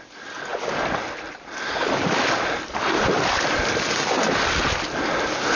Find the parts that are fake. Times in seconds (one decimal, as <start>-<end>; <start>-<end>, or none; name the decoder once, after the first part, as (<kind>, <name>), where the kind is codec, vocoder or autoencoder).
none